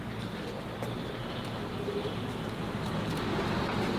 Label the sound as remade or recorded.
recorded